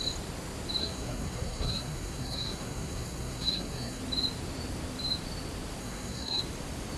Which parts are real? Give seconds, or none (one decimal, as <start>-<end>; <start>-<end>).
0.0-0.8; 4.0-5.8; 6.4-7.0